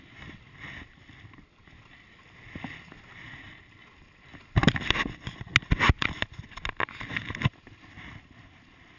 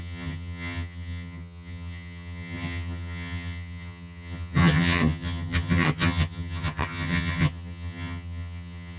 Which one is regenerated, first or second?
second